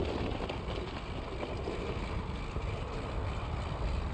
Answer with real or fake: real